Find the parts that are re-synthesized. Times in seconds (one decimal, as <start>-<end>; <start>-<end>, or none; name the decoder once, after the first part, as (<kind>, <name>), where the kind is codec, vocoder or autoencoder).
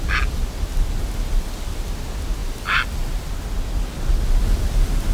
none